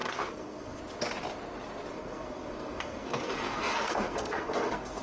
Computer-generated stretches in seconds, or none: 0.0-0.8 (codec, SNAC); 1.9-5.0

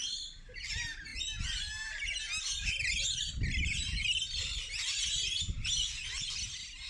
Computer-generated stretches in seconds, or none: none

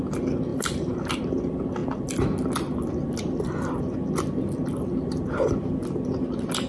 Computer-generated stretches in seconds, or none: 0.5-1.1 (vocoder, BigVGAN v2)

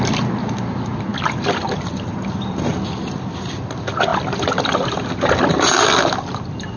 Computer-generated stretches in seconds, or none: 4.1-5.6 (vocoder, BigVGAN v2)

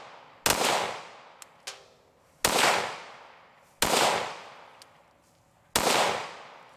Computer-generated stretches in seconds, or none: none

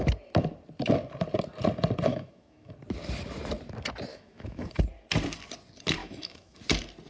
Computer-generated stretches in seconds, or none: 2.1-2.7 (autoencoder, DAC-VAE); 4.1-4.8; 6.0-6.6

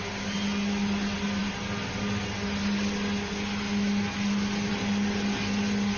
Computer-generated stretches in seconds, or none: none

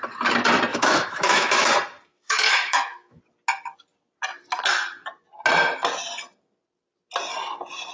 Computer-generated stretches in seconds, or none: 0.7-1.7 (autoencoder, DAC-VAE); 2.1-3.2